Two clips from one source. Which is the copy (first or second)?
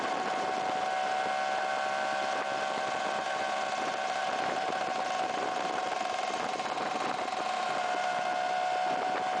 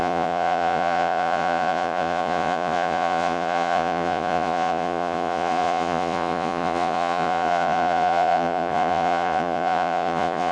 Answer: second